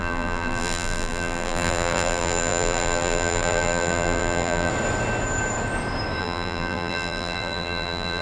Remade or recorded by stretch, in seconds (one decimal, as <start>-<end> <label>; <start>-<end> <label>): 0.0-4.7 remade; 4.7-6.2 recorded; 6.2-8.2 remade